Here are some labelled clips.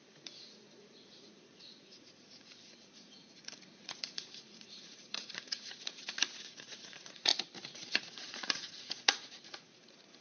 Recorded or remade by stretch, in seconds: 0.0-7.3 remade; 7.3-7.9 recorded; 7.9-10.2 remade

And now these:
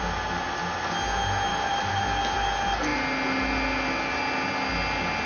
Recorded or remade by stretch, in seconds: 0.0-1.5 recorded; 1.5-2.0 remade; 2.0-5.3 recorded

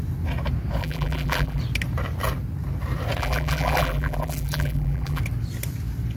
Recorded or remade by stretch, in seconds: 0.0-0.8 recorded; 0.8-1.6 remade; 1.6-3.2 recorded; 3.2-5.2 remade; 5.2-6.2 recorded

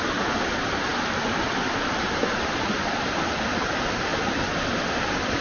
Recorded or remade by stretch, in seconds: 0.0-5.4 recorded

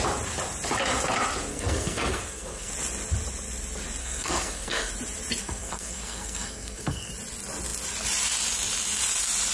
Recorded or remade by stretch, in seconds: 0.0-1.5 recorded; 1.5-2.7 remade; 2.7-4.0 recorded; 4.0-4.9 remade; 4.9-5.4 recorded; 5.4-7.1 remade; 7.1-9.5 recorded

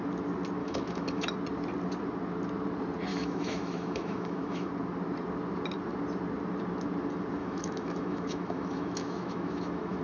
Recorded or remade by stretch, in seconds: 0.0-0.6 recorded; 0.6-1.3 remade; 1.3-3.1 recorded; 3.1-4.7 remade; 4.7-7.4 recorded; 7.4-10.0 remade

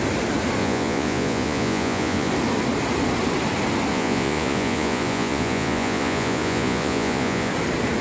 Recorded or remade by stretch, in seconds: 0.0-0.6 recorded; 0.6-2.3 remade; 2.3-3.9 recorded; 3.9-7.5 remade; 7.5-8.0 recorded